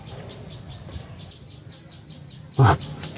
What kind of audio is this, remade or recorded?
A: recorded